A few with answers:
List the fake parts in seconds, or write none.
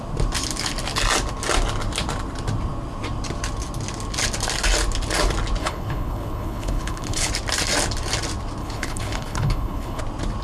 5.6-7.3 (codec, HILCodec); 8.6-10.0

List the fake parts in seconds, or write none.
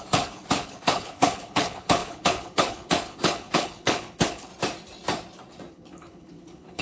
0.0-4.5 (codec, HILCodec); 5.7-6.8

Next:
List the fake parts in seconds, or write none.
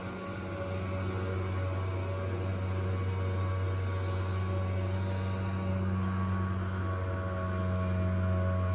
none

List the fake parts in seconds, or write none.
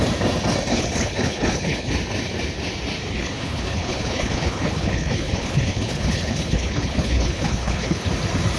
0.7-1.9 (codec, HILCodec); 3.1-8.1